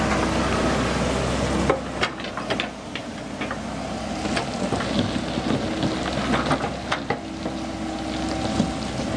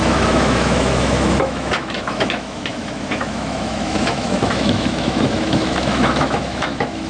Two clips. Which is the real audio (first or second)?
first